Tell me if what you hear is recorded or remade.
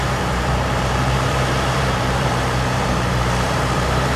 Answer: remade